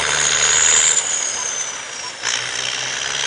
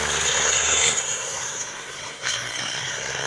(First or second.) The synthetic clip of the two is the second